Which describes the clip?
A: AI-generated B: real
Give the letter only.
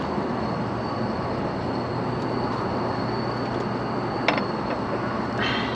B